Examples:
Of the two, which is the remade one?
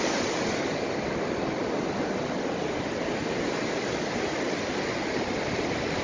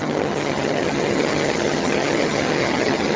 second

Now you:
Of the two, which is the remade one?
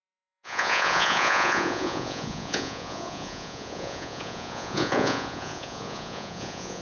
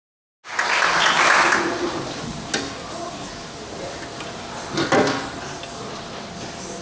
first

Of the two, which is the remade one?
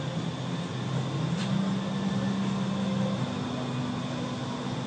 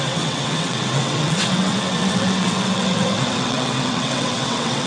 second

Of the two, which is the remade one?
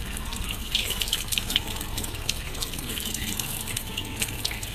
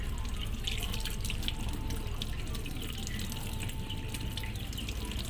first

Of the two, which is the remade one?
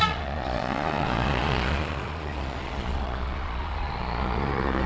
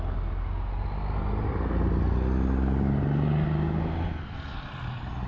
first